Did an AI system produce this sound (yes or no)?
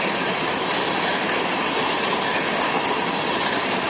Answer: no